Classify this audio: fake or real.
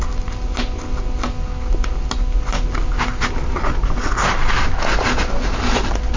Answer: real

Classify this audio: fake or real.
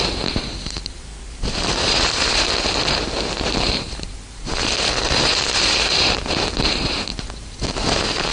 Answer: fake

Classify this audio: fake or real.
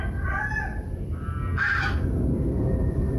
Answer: fake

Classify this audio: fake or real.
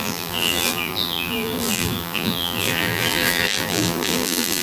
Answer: fake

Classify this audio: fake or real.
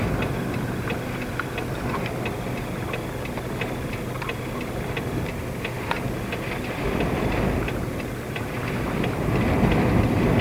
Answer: real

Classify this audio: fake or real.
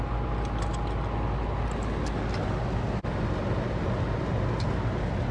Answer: real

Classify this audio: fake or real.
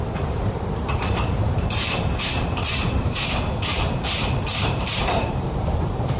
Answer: fake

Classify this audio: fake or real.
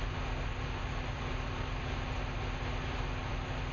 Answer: real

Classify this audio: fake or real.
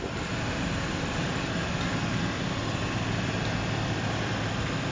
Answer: fake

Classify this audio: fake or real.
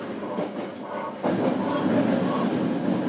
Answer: real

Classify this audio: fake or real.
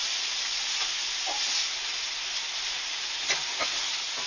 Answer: fake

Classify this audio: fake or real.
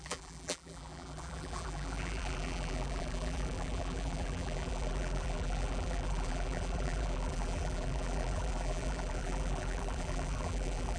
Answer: fake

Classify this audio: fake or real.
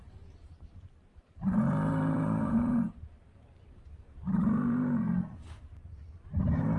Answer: fake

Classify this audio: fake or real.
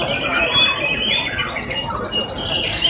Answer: fake